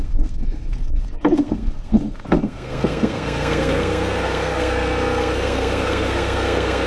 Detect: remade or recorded remade